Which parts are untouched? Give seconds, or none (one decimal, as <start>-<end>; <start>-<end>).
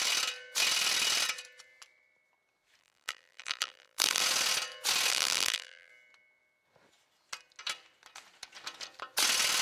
0.0-2.8; 4.2-5.1; 5.9-9.6